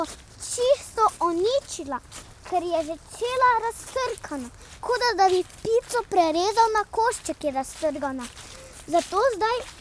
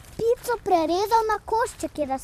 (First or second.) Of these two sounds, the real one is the first